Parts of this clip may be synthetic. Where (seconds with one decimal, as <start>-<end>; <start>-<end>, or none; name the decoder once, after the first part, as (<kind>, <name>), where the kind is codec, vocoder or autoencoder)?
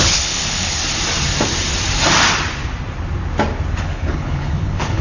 0.0-0.8 (codec, HILCodec); 3.8-5.0